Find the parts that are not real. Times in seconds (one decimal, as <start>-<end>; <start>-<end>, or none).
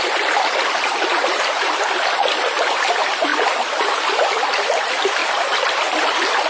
none